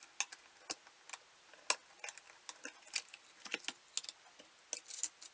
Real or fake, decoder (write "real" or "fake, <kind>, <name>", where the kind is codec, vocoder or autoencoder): real